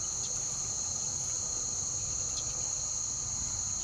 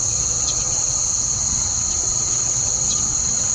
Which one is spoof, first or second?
second